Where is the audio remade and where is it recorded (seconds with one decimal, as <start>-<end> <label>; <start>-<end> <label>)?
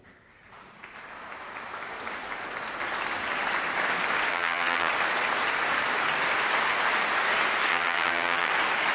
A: 0.0-4.3 recorded; 4.3-4.9 remade; 4.9-7.7 recorded; 7.7-8.5 remade; 8.5-8.9 recorded